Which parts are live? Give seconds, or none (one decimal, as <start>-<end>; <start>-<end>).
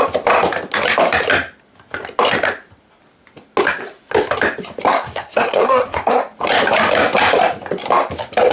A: 0.0-4.9; 6.2-8.5